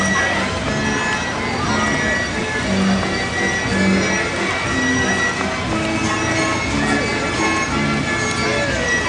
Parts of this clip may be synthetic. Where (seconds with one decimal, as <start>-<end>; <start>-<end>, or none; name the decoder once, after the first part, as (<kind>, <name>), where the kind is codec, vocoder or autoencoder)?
none